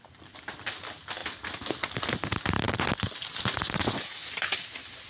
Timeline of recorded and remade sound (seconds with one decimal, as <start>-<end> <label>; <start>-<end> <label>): 0.0-5.1 recorded